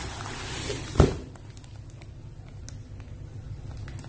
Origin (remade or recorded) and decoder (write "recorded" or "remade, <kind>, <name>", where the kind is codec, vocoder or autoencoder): recorded